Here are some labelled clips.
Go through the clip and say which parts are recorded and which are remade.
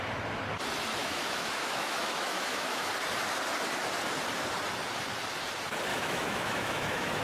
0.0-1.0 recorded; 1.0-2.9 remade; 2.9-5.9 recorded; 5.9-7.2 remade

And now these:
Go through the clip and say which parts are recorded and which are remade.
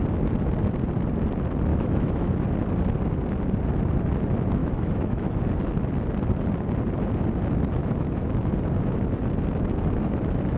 0.0-1.7 recorded; 1.7-2.3 remade; 2.3-4.6 recorded; 4.6-5.4 remade; 5.4-7.8 recorded; 7.8-8.5 remade; 8.5-10.6 recorded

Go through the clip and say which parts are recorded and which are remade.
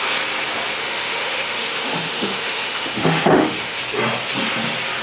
0.0-0.8 recorded; 0.8-3.8 remade; 3.8-5.0 recorded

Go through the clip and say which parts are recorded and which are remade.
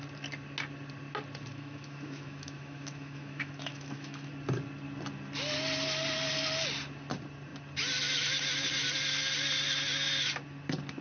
0.0-1.5 recorded; 1.5-4.3 remade; 4.3-11.0 recorded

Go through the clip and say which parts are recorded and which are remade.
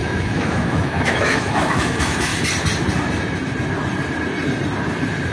0.0-2.3 remade; 2.3-5.3 recorded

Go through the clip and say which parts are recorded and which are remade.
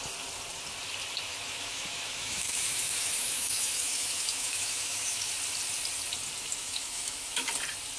0.0-1.3 recorded; 1.3-5.3 remade; 5.3-6.6 recorded; 6.6-7.5 remade; 7.5-8.0 recorded